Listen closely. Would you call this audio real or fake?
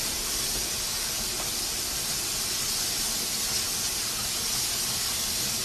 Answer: real